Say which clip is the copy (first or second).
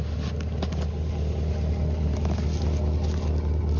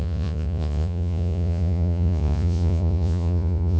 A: second